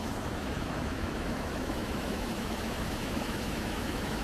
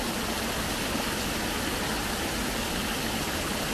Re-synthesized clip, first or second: first